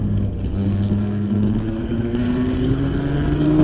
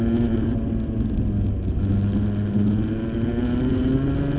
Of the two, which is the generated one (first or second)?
first